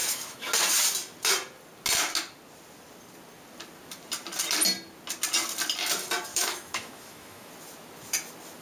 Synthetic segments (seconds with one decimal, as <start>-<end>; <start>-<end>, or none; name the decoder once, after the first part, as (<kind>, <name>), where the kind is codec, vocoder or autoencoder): 0.0-0.5 (autoencoder, DAC-VAE); 6.3-7.5